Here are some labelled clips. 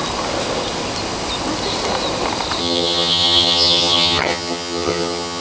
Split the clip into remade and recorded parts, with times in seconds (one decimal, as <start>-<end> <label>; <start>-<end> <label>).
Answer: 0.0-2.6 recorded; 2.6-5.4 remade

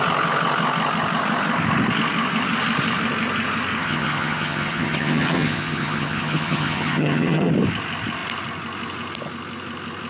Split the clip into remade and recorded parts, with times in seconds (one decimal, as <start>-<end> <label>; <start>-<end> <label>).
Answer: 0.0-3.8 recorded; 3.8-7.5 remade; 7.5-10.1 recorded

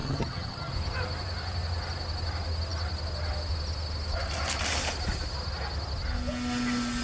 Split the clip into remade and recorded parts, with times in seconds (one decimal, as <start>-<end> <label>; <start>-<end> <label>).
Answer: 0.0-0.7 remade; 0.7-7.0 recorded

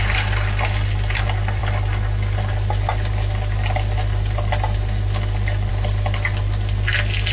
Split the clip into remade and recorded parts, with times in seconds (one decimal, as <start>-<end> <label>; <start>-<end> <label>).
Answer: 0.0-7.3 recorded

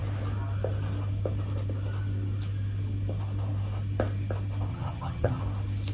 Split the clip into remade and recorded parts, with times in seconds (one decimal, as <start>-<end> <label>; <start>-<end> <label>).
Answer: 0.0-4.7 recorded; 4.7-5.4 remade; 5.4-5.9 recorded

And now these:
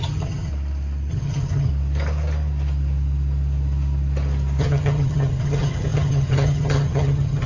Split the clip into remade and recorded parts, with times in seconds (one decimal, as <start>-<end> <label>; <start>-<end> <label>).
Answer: 0.0-0.5 remade; 0.5-1.1 recorded; 1.1-1.7 remade; 1.7-4.6 recorded; 4.6-7.5 remade

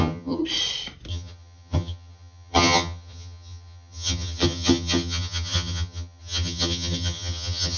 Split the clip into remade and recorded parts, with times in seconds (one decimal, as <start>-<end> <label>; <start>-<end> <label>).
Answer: 0.0-0.4 remade; 0.4-1.1 recorded; 1.1-7.8 remade

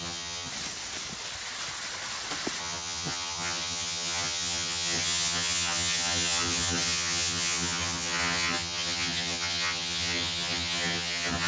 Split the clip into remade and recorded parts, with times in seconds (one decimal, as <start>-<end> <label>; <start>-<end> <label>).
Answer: 0.0-0.5 remade; 0.5-2.6 recorded; 2.6-11.5 remade